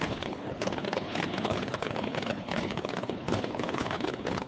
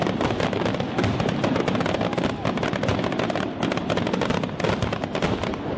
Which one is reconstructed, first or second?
first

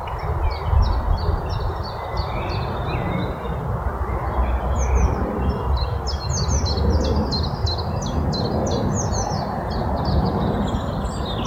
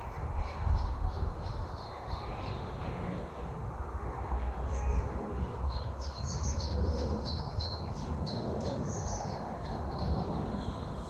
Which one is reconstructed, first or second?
second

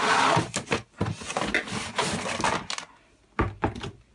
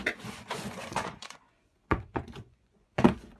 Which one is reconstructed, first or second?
second